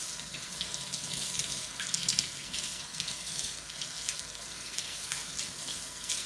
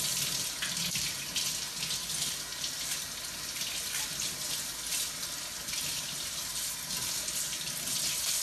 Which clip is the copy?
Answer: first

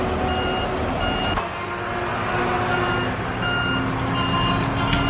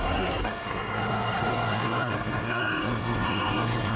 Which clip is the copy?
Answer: second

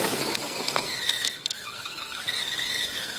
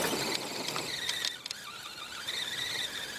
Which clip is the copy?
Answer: first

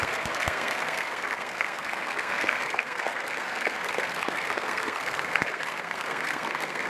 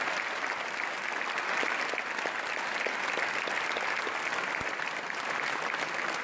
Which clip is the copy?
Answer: first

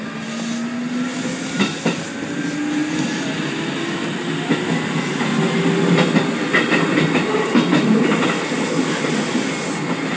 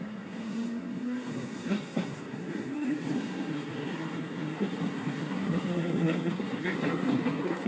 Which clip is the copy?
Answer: second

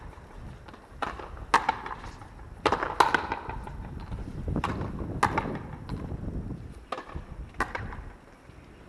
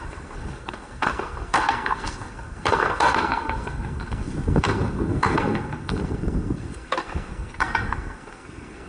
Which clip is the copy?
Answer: second